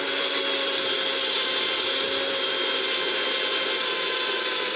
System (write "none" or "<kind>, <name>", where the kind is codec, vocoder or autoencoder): none